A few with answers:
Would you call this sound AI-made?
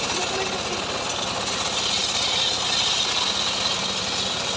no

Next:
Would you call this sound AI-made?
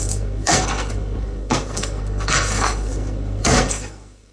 yes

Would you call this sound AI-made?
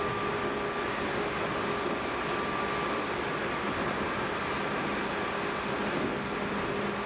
no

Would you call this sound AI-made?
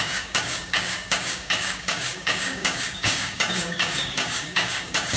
yes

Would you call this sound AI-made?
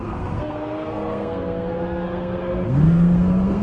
yes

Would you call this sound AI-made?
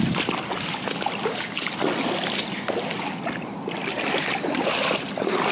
no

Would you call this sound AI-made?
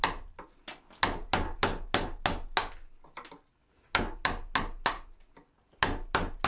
no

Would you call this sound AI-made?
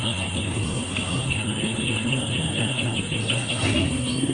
yes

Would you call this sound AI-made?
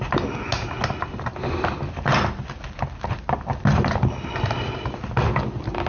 no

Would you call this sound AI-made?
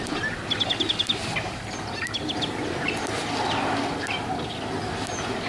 no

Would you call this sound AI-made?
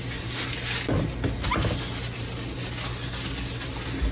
no